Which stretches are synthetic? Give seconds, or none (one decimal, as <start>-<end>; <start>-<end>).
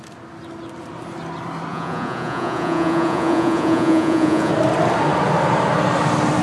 1.7-4.5